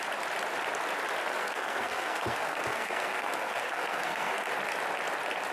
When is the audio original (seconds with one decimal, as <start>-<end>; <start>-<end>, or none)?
0.0-1.3; 4.5-5.5